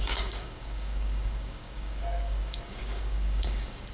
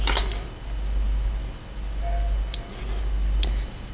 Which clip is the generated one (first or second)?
first